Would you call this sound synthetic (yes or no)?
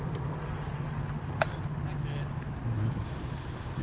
no